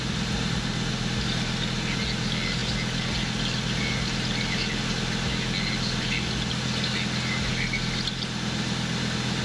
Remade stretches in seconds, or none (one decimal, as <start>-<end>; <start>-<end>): none